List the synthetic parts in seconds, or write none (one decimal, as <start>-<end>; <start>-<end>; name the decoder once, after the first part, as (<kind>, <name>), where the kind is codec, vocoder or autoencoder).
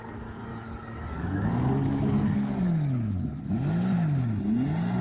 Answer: 0.5-3.5 (codec, DAC)